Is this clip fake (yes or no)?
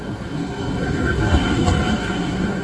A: yes